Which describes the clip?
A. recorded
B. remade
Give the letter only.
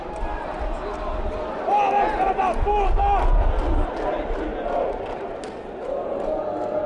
A